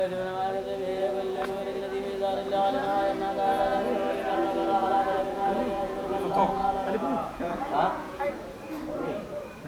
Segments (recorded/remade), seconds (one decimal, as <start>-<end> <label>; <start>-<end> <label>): 0.0-0.9 recorded; 0.9-1.8 remade; 1.8-4.8 recorded; 4.8-8.3 remade; 8.3-9.7 recorded